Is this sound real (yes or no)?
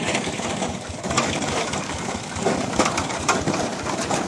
no